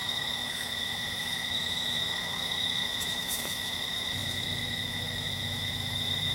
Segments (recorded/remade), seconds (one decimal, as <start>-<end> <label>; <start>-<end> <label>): 0.0-6.3 remade